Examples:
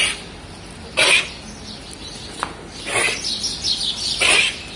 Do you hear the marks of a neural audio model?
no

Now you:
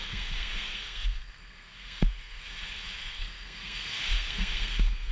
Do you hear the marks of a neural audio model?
yes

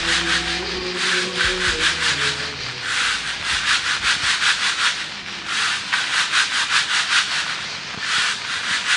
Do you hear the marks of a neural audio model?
no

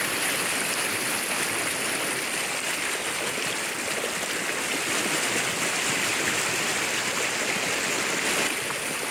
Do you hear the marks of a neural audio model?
no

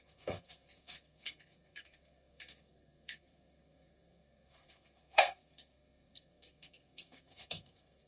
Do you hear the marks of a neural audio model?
yes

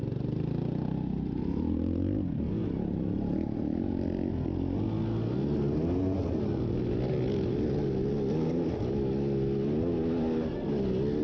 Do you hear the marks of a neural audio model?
no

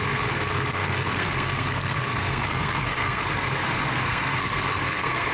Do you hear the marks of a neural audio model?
yes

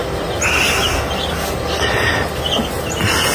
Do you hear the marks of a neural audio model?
no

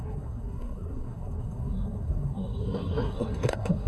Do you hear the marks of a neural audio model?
yes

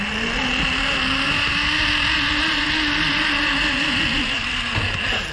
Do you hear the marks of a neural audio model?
no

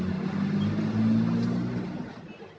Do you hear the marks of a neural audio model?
no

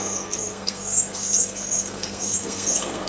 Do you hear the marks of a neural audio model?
yes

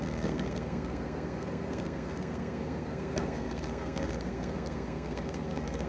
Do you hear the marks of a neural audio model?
yes